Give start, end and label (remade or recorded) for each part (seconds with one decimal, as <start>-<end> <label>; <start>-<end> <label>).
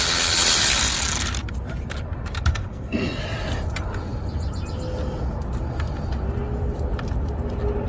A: 0.0-2.5 recorded; 2.5-3.2 remade; 3.2-7.9 recorded